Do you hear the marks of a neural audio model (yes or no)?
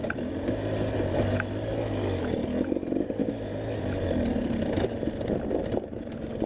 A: no